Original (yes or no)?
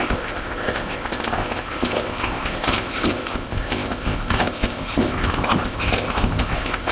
no